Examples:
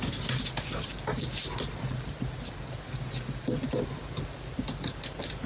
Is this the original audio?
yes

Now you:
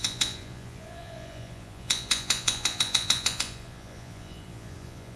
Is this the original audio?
no